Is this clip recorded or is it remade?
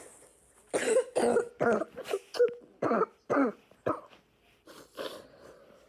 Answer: recorded